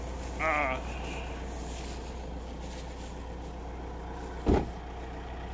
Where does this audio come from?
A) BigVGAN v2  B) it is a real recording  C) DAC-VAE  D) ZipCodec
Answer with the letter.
B